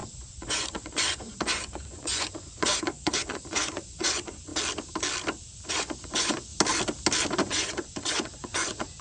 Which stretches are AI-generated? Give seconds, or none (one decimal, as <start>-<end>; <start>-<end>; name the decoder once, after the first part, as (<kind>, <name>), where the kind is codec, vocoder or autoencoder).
0.0-4.5 (vocoder, Vocos); 5.7-6.5; 7.4-9.0